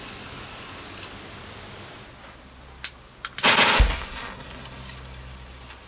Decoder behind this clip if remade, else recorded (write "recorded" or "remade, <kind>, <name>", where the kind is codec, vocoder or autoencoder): recorded